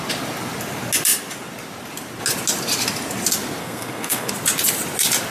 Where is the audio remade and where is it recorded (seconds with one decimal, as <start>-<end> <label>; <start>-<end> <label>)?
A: 0.0-3.6 recorded; 3.6-4.3 remade; 4.3-5.3 recorded